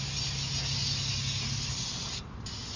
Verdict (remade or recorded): recorded